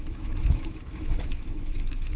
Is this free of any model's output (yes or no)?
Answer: no